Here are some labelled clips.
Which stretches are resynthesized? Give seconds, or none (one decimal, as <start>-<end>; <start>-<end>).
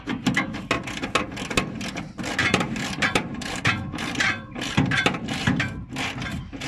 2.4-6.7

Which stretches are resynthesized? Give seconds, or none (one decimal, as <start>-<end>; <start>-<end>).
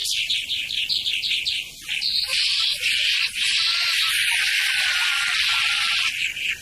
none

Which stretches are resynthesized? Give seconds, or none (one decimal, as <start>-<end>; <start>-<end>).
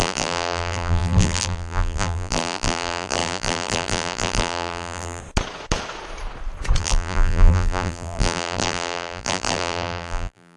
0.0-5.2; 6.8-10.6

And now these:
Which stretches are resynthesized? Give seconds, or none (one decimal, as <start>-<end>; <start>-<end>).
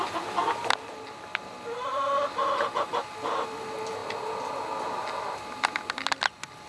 2.4-3.0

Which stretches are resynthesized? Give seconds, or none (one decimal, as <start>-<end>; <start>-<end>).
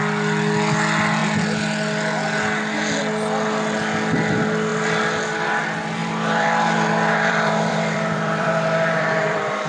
6.0-9.7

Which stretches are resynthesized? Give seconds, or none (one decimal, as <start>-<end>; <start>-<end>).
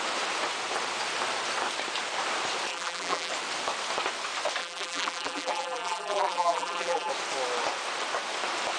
2.7-3.3; 4.6-7.1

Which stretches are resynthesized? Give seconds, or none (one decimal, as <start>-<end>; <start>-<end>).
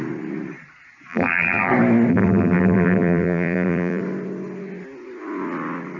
1.1-1.7; 2.1-4.0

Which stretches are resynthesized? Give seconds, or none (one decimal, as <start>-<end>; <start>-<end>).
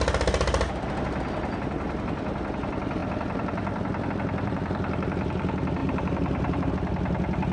5.8-6.7